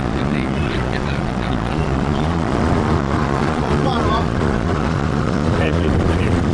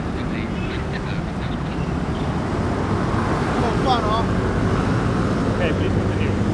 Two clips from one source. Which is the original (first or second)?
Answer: second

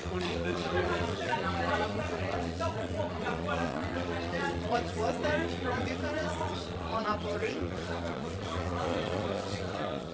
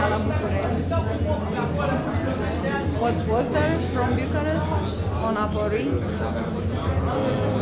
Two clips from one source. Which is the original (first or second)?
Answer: second